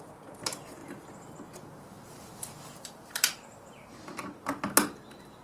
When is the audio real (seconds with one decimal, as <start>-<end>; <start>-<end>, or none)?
0.0-0.8; 4.0-5.4